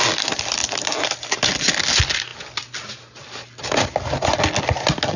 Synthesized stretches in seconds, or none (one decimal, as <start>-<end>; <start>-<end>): none

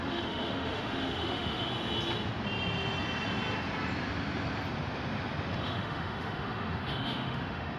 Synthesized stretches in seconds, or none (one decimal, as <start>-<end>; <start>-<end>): 0.0-1.7; 5.5-7.8

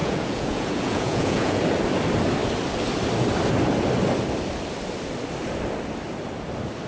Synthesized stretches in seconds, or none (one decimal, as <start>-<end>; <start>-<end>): 0.0-1.6

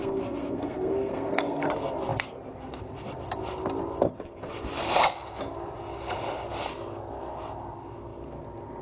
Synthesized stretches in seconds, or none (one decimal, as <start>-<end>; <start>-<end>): 0.0-1.7

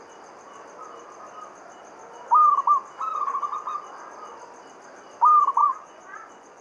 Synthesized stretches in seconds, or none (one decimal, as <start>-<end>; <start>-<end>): 5.6-6.6

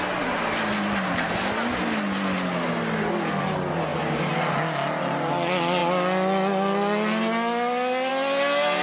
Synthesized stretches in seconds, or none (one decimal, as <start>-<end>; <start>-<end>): none